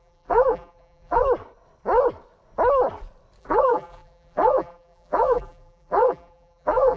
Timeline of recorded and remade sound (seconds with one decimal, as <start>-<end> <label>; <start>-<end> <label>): 0.0-1.2 remade; 1.2-3.4 recorded; 3.4-7.0 remade